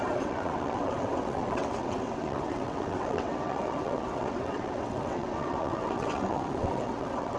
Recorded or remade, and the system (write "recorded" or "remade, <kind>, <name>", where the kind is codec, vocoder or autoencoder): remade, vocoder, WaveNeXt